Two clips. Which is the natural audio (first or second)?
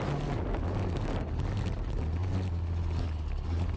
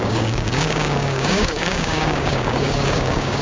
first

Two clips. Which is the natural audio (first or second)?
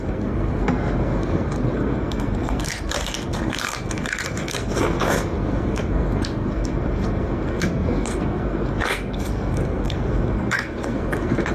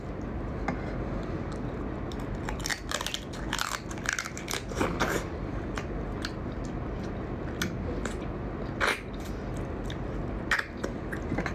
second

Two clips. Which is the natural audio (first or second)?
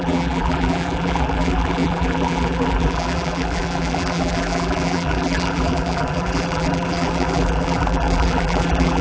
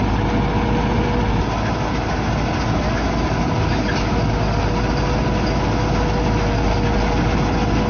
second